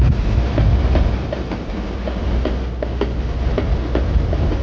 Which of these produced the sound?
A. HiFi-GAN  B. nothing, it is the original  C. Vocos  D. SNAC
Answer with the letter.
B